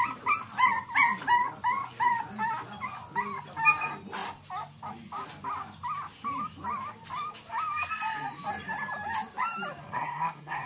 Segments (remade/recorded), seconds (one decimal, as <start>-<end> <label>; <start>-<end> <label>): 0.0-9.8 recorded; 9.8-10.7 remade